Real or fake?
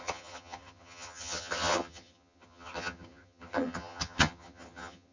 fake